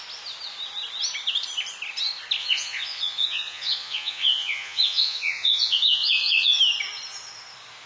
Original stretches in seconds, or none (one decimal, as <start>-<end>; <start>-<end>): 0.0-2.4; 6.6-7.9